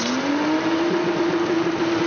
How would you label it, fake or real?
fake